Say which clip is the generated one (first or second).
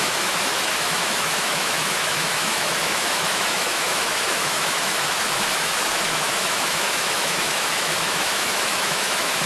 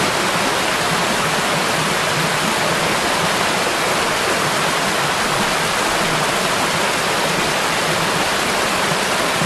first